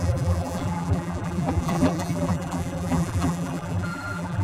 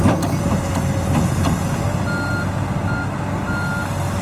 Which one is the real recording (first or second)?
second